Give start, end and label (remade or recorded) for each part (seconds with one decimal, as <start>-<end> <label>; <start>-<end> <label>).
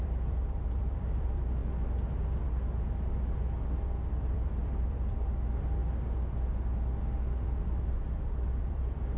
0.0-1.6 remade; 1.6-4.1 recorded; 4.1-5.8 remade; 5.8-7.6 recorded; 7.6-9.2 remade